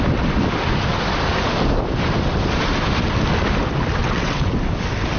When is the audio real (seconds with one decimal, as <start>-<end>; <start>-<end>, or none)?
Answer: 0.0-4.0; 4.5-5.2